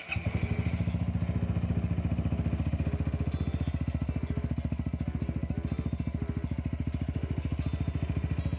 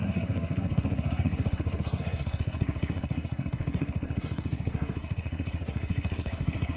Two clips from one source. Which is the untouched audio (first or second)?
first